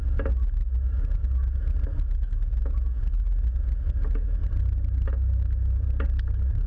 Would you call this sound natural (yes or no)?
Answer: yes